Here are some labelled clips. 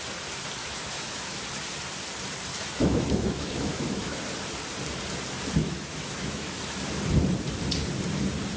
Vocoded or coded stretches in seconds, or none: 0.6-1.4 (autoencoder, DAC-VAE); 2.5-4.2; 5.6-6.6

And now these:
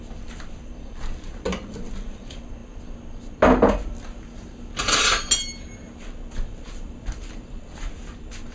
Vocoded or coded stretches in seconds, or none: none